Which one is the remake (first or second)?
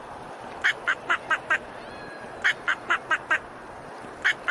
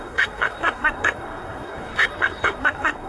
second